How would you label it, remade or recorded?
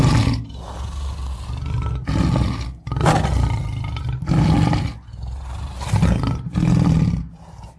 recorded